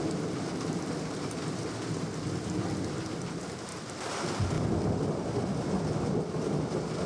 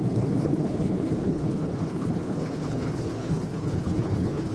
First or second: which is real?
first